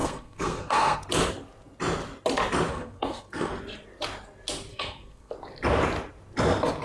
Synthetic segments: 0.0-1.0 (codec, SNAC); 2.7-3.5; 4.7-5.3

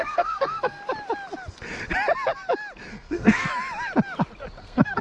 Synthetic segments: 0.0-0.8 (codec, SNAC); 2.9-3.5; 4.6-5.0

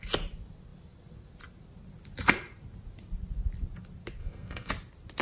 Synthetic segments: 4.2-4.7 (codec, SNAC)

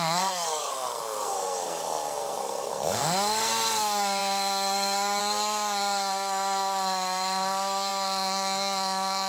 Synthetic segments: 0.0-9.3 (codec, SNAC)

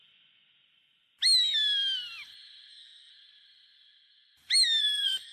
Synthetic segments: 2.7-3.1 (codec, SNAC); 4.8-5.3

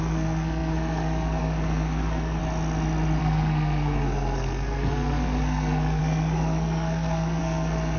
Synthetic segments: 0.0-2.4 (codec, SNAC); 3.2-8.0